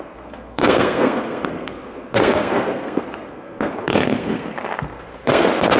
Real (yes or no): no